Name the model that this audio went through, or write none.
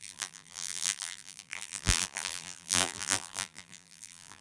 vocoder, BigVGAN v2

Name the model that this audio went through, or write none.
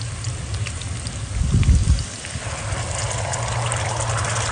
none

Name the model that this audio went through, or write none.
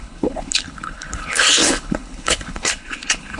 codec, HILCodec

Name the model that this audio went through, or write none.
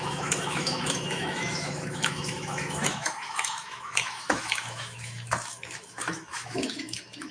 autoencoder, DAC-VAE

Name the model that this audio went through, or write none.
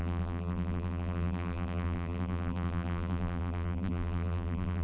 vocoder, BigVGAN v2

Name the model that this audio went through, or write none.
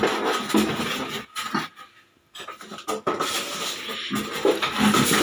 none